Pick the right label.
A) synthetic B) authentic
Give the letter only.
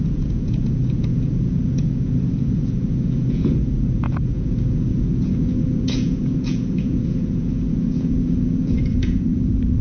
A